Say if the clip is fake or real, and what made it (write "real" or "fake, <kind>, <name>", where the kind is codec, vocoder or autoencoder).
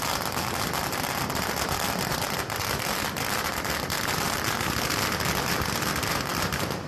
real